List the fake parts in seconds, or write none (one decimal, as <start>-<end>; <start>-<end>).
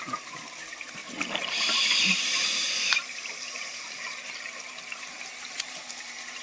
0.0-1.0; 3.1-6.4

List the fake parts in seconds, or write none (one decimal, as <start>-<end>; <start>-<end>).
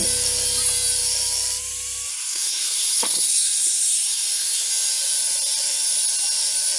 2.1-4.7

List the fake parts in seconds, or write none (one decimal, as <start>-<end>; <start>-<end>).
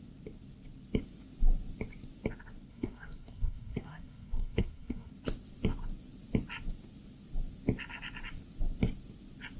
2.7-5.1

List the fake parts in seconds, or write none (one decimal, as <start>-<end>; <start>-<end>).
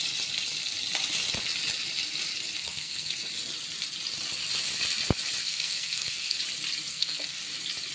2.6-3.1; 5.4-6.4; 6.9-7.4